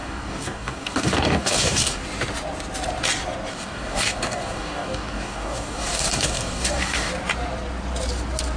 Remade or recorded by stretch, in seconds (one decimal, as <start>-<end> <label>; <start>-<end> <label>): 0.0-2.0 remade; 2.0-3.5 recorded; 3.5-7.1 remade; 7.1-8.6 recorded